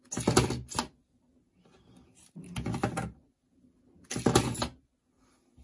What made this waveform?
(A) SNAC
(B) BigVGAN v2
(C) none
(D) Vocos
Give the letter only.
C